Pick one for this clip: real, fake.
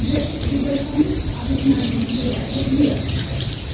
fake